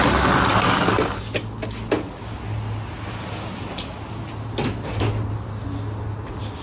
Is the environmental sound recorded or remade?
recorded